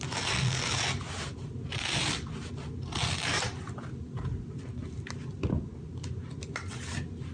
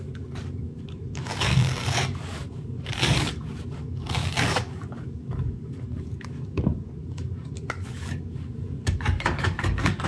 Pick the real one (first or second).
first